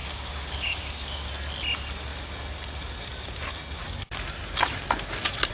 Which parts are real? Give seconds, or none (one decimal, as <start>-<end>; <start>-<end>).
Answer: 1.3-5.5